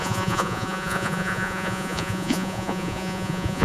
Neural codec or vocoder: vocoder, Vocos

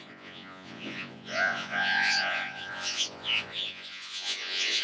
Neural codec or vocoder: vocoder, Vocos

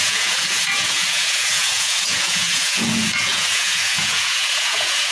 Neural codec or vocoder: vocoder, Vocos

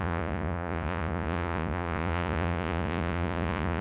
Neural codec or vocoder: vocoder, Vocos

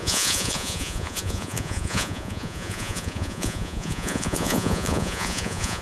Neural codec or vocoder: vocoder, Vocos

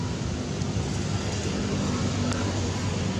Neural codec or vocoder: none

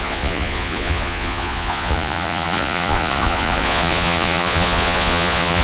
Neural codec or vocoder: vocoder, Vocos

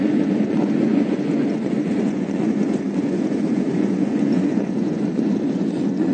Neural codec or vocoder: vocoder, Vocos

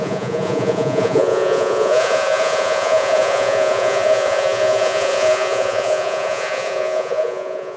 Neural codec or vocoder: vocoder, Vocos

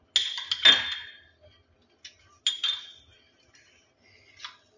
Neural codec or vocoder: none